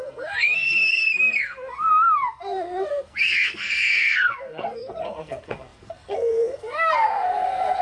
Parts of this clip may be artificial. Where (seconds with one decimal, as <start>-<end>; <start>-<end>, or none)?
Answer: 0.0-7.8